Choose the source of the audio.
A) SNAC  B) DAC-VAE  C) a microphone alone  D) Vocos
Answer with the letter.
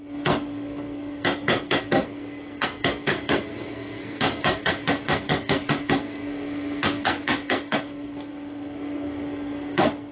A